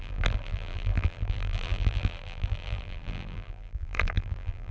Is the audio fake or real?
fake